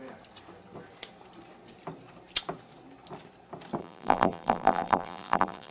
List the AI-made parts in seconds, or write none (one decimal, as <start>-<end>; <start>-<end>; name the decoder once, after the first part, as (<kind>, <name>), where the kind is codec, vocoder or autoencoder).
3.8-5.7 (vocoder, BigVGAN v2)